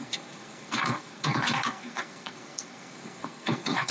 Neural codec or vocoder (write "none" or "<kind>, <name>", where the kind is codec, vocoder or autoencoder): codec, SNAC